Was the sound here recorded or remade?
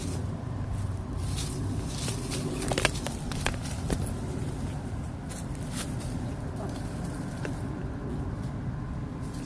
recorded